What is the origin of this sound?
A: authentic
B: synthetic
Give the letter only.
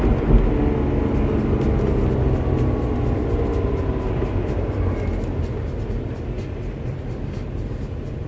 A